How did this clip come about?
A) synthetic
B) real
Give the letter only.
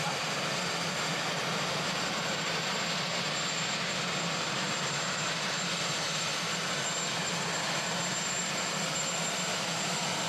A